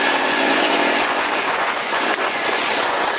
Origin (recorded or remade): remade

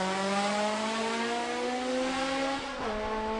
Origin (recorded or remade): recorded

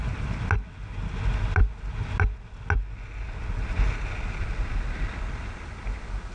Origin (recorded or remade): recorded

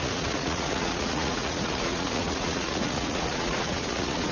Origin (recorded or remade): remade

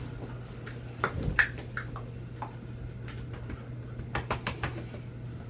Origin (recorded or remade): recorded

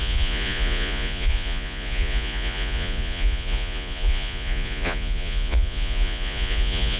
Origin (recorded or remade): remade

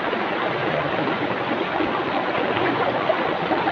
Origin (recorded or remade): remade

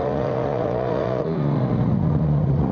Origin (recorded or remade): remade